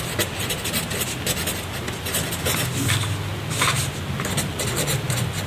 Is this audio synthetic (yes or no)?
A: no